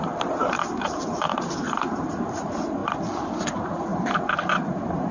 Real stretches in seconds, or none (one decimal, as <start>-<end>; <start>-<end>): 2.8-3.3